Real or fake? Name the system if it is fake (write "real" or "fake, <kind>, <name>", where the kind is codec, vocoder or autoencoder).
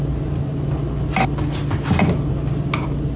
real